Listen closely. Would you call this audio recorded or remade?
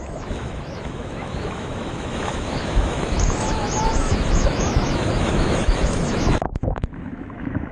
remade